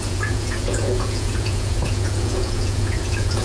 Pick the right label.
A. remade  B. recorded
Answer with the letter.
A